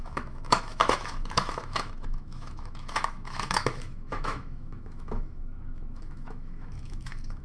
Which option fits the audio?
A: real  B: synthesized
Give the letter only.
B